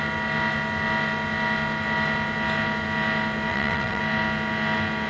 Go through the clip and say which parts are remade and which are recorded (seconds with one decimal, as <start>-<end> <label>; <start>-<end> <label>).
0.0-3.5 recorded; 3.5-4.0 remade; 4.0-5.1 recorded